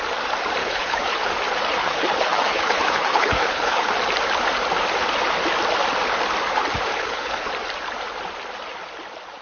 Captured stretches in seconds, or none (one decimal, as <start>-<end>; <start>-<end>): 0.0-0.6; 1.3-1.8; 3.9-6.9; 7.5-9.4